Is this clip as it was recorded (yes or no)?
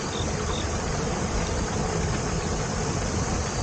yes